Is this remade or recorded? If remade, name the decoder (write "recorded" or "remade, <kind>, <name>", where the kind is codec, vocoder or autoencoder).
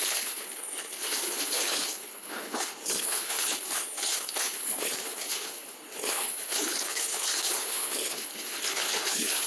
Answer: remade, codec, HILCodec